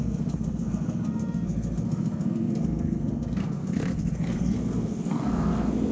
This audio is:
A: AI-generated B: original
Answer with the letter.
A